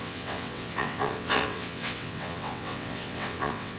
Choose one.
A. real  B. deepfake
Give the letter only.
B